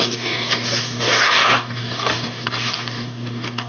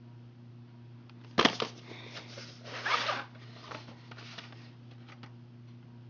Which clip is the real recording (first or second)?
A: second